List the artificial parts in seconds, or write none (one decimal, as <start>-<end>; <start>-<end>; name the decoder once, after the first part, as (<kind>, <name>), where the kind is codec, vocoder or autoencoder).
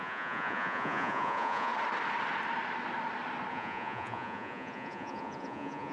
0.0-1.7 (vocoder, Vocos); 3.5-5.9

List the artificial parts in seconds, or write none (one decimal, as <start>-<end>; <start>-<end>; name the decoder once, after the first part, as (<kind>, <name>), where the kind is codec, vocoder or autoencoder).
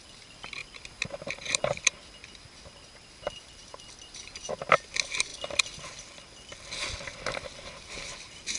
0.6-1.6 (vocoder, BigVGAN v2); 3.6-4.2; 5.3-6.2; 7.1-7.7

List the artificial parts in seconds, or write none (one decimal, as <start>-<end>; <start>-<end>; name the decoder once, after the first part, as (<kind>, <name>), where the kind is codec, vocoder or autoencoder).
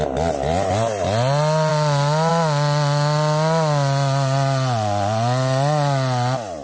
none